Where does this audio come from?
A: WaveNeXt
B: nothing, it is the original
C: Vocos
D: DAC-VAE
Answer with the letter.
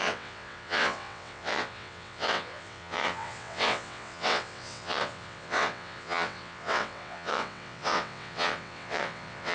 A